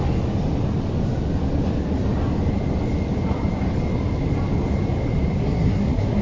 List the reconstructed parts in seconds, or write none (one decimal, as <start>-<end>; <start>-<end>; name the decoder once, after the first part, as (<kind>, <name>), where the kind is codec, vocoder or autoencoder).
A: 5.4-6.2 (codec, SNAC)